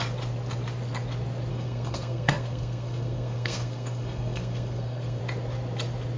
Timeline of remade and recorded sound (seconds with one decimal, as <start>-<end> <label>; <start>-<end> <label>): 0.0-1.5 recorded; 1.5-5.2 remade; 5.2-6.2 recorded

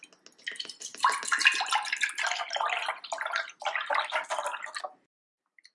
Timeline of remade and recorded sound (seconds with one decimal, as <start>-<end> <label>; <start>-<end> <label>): 0.0-5.7 recorded

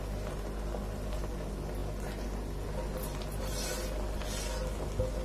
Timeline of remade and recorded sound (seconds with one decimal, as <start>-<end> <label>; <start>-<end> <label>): 0.0-5.2 recorded

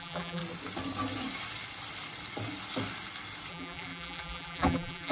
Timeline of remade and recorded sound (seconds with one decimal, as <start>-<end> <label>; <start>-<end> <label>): 0.0-0.4 remade; 0.4-3.5 recorded; 3.5-5.1 remade

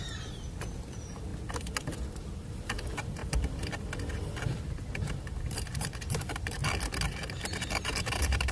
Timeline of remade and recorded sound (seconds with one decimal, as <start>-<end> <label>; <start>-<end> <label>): 0.0-1.3 remade; 1.3-1.8 recorded; 1.8-3.2 remade; 3.2-4.4 recorded; 4.4-6.6 remade; 6.6-7.7 recorded; 7.7-8.5 remade

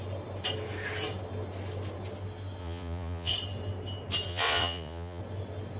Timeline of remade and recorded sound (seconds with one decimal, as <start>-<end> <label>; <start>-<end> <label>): 0.0-2.6 recorded; 2.6-3.3 remade; 3.3-4.3 recorded; 4.3-5.2 remade; 5.2-5.8 recorded

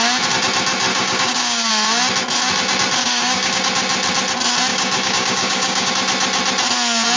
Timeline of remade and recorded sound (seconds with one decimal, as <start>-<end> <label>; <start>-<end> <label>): 0.0-0.9 recorded; 0.9-1.7 remade; 1.7-3.0 recorded; 3.0-3.6 remade; 3.6-4.7 recorded; 4.7-5.9 remade; 5.9-7.2 recorded

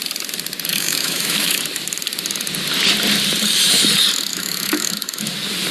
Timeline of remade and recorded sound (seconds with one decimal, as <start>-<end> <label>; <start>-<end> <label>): 0.0-0.7 recorded; 0.7-1.6 remade; 1.6-4.3 recorded; 4.3-5.2 remade; 5.2-5.7 recorded